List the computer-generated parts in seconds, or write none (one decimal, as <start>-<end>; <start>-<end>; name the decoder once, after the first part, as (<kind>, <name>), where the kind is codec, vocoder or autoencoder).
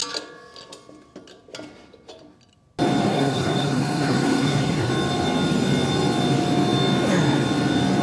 3.0-4.9 (codec, SNAC)